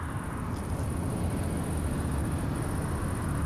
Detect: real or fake real